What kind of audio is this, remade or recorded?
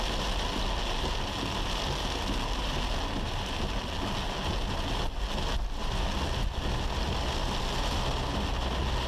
recorded